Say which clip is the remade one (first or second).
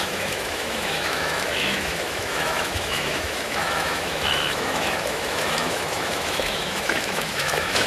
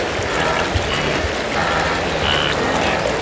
first